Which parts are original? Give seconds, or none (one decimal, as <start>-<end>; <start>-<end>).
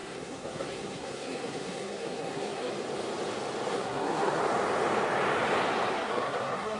2.7-3.7; 4.4-5.9